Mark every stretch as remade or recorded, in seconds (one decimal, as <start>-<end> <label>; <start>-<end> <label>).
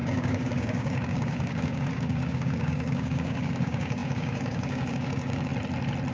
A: 0.0-5.5 remade; 5.5-6.1 recorded